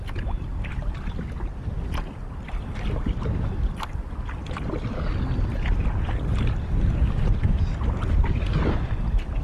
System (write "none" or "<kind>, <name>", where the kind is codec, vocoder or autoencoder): none